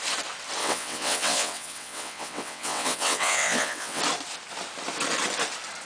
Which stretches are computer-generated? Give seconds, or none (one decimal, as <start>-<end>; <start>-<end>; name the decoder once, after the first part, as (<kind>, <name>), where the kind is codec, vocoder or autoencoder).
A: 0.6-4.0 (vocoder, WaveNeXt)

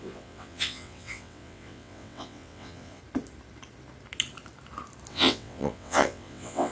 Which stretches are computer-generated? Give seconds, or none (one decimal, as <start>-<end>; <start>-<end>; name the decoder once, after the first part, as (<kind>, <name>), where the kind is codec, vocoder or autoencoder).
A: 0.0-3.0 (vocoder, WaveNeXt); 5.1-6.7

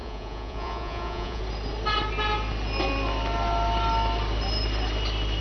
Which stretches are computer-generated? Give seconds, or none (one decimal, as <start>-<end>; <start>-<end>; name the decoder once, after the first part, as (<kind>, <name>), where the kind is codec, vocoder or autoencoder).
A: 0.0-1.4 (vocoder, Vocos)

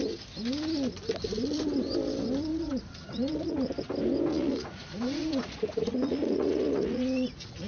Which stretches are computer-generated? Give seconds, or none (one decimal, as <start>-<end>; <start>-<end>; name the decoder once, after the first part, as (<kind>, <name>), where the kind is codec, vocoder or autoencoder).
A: 2.5-3.7 (vocoder, Vocos); 4.3-7.7

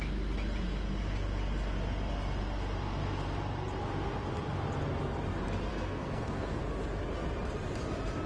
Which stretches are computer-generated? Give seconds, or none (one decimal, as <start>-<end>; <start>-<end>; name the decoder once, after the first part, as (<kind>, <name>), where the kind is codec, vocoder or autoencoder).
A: 5.7-6.6 (codec, SNAC)

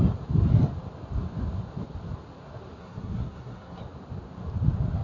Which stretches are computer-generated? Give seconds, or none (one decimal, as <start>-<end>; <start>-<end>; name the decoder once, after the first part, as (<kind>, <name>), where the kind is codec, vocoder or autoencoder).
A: 2.8-3.8 (codec, SNAC)